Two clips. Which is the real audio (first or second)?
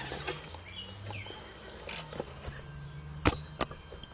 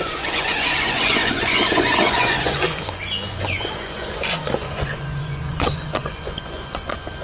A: first